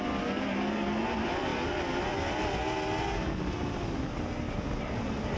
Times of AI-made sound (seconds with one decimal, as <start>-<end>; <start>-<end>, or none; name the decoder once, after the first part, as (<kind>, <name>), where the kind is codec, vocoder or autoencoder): none